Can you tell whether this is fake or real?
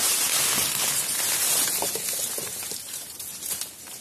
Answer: real